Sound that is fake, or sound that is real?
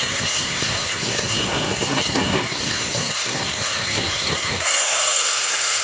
fake